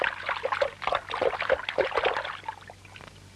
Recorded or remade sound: recorded